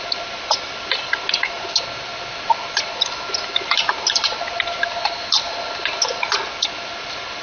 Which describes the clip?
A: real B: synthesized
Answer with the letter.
A